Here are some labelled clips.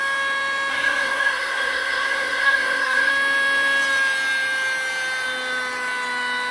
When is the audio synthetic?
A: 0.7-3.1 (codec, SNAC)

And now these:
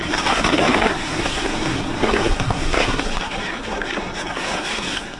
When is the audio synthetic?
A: 0.0-5.2 (codec, SNAC)

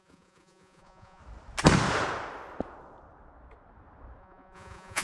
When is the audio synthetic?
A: 0.0-1.2 (vocoder, Vocos); 4.2-5.0

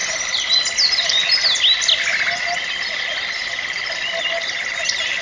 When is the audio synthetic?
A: none

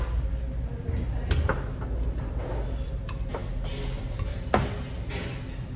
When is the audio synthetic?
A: none